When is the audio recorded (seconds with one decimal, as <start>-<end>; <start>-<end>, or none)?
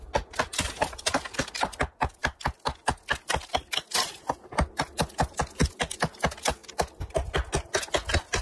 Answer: 0.0-8.4